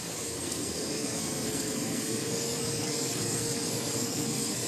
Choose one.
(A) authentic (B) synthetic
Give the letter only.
B